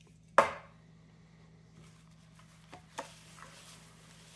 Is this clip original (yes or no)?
yes